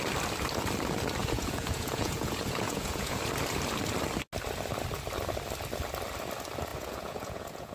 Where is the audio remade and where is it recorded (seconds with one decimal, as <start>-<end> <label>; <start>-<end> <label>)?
0.0-1.2 recorded; 1.2-3.2 remade; 3.2-6.7 recorded; 6.7-7.7 remade